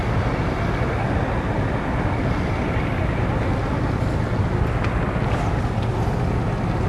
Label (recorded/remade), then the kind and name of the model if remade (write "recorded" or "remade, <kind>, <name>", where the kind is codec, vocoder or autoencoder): recorded